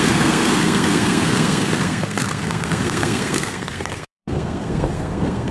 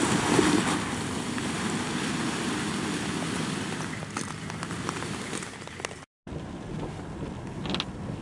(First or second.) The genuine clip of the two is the second